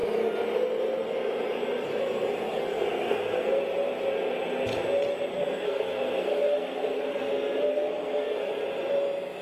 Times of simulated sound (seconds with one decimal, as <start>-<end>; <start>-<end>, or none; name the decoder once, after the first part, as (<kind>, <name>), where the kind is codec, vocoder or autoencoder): 2.5-3.6 (codec, SNAC); 5.3-7.3; 7.7-8.5